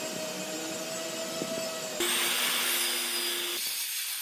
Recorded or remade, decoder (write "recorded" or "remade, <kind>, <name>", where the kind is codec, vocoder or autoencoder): recorded